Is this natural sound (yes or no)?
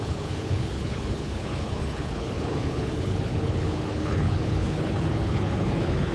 no